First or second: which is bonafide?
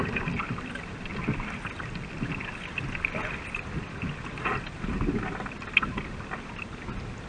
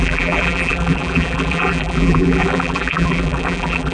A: first